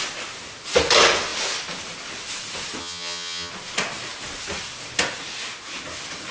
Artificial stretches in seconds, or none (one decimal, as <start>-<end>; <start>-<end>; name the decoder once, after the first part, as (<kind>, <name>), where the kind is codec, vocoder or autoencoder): 2.8-3.5 (vocoder, HiFi-GAN)